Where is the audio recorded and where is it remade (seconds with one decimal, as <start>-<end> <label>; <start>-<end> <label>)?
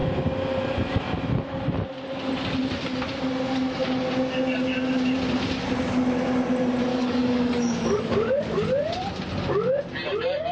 0.0-6.9 recorded; 6.9-8.4 remade; 8.4-10.5 recorded